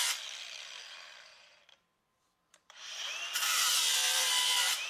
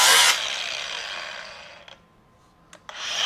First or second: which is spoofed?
first